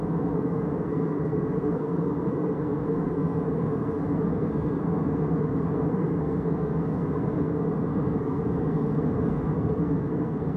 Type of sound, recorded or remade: remade